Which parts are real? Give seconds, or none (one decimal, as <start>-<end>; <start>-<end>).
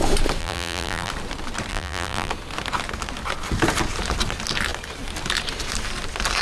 0.0-0.4; 1.1-1.7; 2.3-6.4